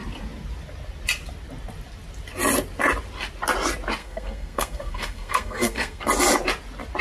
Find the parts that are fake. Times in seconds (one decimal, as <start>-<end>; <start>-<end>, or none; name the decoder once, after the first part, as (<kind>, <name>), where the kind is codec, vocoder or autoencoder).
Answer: 4.0-6.0 (codec, SNAC)